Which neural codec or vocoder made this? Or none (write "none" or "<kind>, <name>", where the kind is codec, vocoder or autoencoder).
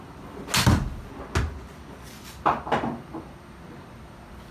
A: none